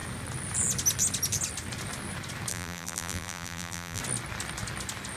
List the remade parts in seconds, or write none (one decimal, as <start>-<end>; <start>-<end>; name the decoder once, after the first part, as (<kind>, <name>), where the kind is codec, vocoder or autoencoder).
2.5-4.0 (vocoder, BigVGAN v2)